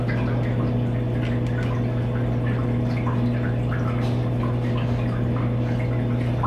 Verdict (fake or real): real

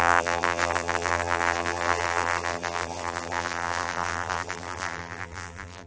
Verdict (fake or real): fake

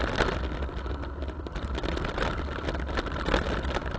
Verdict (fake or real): real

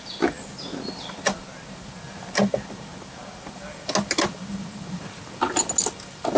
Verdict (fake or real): real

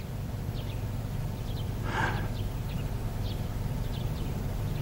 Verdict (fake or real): fake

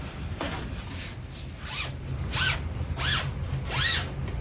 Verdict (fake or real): fake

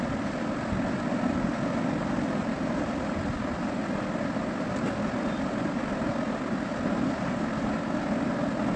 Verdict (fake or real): real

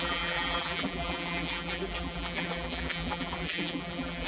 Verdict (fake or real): fake